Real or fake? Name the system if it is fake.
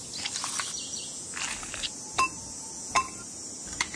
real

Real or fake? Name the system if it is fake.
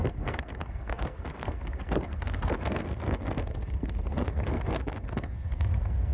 fake, codec, SNAC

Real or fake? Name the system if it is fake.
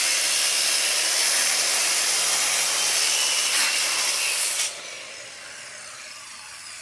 real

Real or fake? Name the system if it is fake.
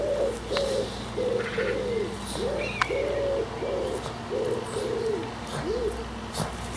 real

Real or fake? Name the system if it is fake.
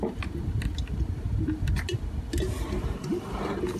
real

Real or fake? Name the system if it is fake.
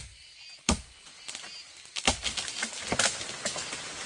real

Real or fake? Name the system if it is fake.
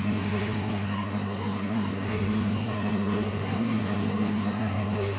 fake, codec, SNAC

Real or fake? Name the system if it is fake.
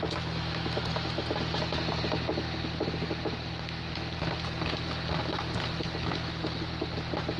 real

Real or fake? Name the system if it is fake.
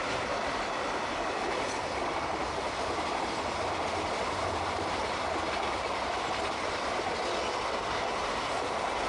real